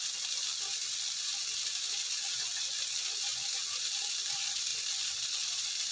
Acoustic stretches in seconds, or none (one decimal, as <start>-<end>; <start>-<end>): 0.0-5.9